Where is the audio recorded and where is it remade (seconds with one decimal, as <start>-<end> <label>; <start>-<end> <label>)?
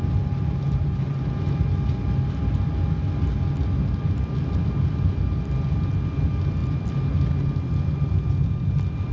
0.0-9.1 recorded